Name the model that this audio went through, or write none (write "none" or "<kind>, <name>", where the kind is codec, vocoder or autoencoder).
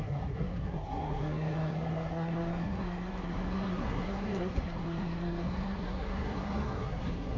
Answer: codec, SNAC